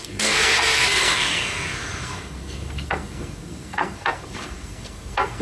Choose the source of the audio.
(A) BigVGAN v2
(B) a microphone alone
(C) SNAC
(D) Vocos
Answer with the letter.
C